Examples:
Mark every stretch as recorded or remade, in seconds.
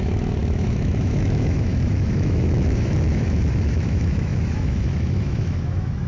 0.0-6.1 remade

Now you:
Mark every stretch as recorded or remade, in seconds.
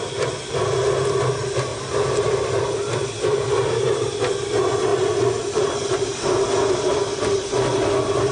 0.0-8.3 recorded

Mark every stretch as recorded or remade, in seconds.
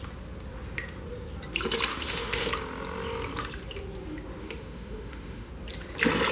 0.0-1.9 recorded; 1.9-2.5 remade; 2.5-4.4 recorded; 4.4-5.5 remade; 5.5-6.3 recorded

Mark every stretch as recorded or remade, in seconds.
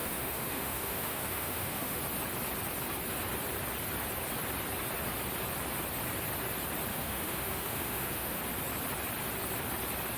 0.0-2.0 remade; 2.0-6.9 recorded; 6.9-8.4 remade; 8.4-10.2 recorded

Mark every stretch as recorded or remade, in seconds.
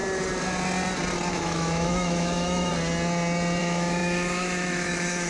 0.0-1.3 recorded; 1.3-2.7 remade; 2.7-3.6 recorded; 3.6-5.3 remade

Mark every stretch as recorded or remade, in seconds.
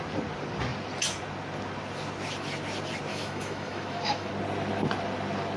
0.0-3.1 recorded; 3.1-4.3 remade; 4.3-5.6 recorded